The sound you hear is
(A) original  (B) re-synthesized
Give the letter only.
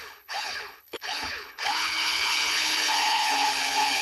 B